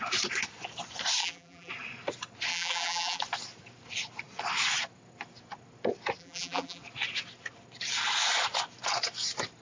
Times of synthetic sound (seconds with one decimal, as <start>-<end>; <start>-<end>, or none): 1.2-1.7; 2.5-3.2; 6.2-6.8